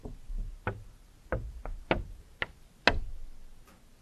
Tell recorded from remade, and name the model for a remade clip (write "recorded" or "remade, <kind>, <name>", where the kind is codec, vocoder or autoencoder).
recorded